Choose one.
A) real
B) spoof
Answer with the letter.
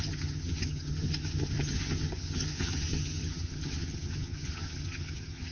B